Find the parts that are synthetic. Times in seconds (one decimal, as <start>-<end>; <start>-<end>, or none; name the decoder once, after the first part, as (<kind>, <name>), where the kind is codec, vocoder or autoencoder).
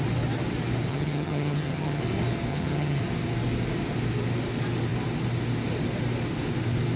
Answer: 0.9-2.0 (vocoder, HiFi-GAN); 2.5-3.0